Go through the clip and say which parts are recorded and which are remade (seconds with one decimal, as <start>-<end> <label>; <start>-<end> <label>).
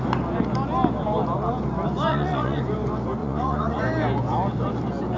0.0-2.1 recorded; 2.1-2.6 remade; 2.6-3.2 recorded; 3.2-3.8 remade; 3.8-5.2 recorded